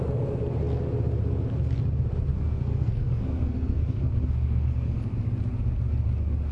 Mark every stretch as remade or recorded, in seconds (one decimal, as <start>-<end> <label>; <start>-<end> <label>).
0.0-2.3 recorded; 2.3-5.0 remade; 5.0-6.5 recorded